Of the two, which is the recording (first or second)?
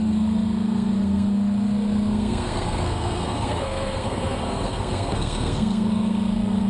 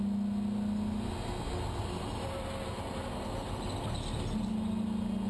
second